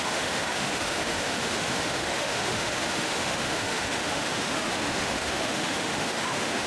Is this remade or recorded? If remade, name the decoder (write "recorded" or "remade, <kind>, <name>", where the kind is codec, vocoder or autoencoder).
remade, autoencoder, DAC-VAE